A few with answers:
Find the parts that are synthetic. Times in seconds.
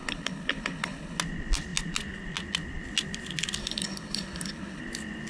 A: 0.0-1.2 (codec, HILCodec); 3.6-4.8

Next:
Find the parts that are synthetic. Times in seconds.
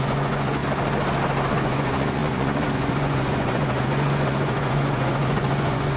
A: 0.0-0.6 (vocoder, Vocos); 1.5-6.0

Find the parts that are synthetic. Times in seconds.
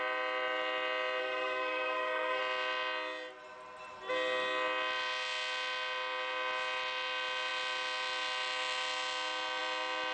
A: 1.2-2.4 (codec, SNAC)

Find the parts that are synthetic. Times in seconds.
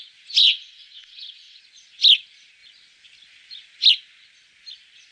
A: 0.4-1.6 (vocoder, WaveNeXt)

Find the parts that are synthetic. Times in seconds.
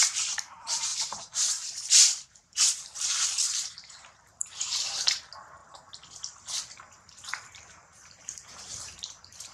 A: 0.0-5.6 (vocoder, BigVGAN v2); 7.6-9.5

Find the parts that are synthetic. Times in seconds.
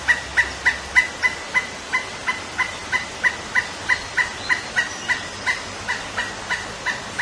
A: none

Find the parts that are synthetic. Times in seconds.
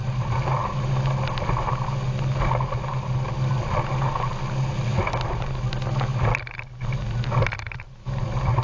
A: none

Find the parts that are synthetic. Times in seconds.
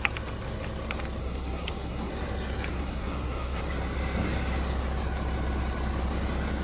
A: 1.2-2.1 (codec, SNAC); 2.7-3.6